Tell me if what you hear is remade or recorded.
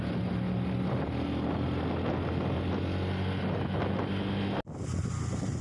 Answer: recorded